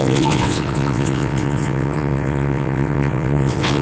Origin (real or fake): fake